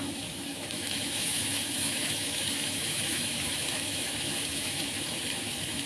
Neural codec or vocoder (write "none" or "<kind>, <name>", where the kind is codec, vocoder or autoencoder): autoencoder, DAC-VAE